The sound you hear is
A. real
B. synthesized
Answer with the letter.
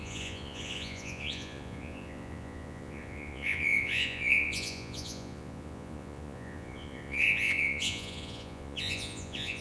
B